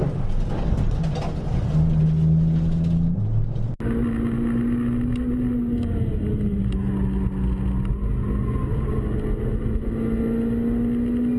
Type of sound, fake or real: real